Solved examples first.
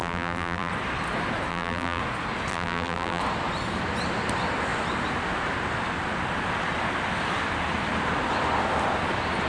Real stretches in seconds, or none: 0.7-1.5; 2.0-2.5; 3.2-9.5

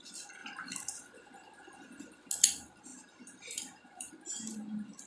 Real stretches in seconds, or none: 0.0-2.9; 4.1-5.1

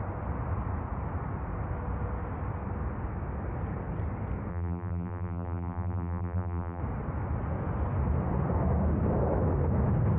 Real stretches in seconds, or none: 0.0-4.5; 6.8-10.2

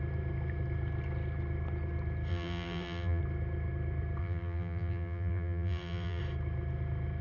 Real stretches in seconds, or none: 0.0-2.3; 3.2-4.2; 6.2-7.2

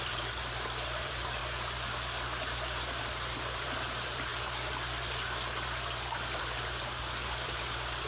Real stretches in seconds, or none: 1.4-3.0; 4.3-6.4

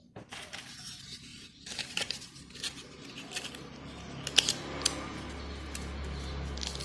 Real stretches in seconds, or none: 0.0-6.8